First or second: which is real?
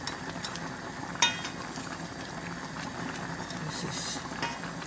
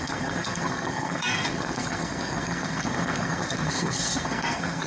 first